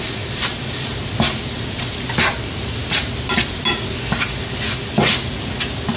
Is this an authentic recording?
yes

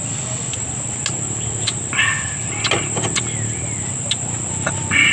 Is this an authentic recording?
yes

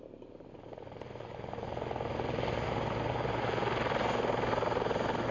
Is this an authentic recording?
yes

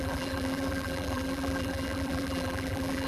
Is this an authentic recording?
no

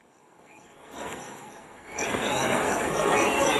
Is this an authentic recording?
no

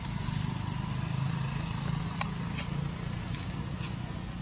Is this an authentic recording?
yes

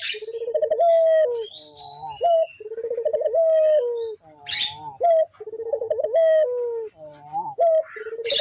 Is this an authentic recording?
yes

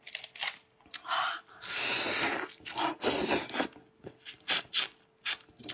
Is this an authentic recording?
yes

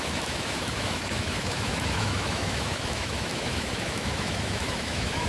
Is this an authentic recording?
no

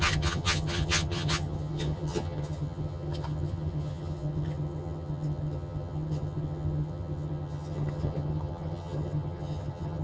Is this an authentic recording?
no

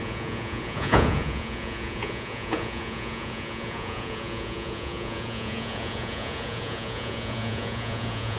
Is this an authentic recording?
no